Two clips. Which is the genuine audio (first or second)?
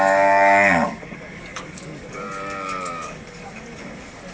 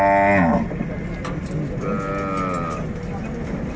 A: second